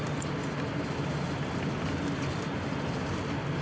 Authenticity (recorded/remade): recorded